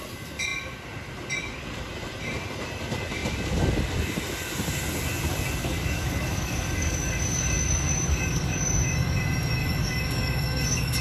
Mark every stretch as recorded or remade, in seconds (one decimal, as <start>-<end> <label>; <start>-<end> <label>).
0.0-5.6 recorded; 5.6-9.2 remade; 9.2-9.6 recorded; 9.6-11.0 remade

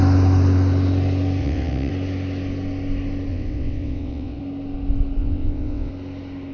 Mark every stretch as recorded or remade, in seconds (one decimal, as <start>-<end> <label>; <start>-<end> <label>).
0.0-1.4 recorded; 1.4-1.9 remade; 1.9-3.3 recorded; 3.3-4.4 remade; 4.4-5.2 recorded; 5.2-5.9 remade; 5.9-6.5 recorded

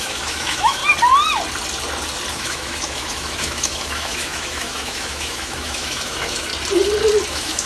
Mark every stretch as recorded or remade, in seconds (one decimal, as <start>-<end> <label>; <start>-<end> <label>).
0.0-0.8 remade; 0.8-2.3 recorded; 2.3-6.5 remade; 6.5-7.3 recorded; 7.3-7.7 remade

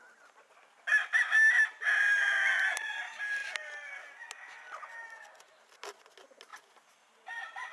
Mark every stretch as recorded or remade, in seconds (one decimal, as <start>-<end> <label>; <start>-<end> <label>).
0.0-7.7 recorded